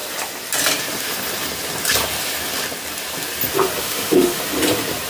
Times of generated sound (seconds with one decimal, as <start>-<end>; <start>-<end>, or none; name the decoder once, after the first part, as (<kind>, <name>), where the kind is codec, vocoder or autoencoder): 3.8-4.4 (autoencoder, DAC-VAE)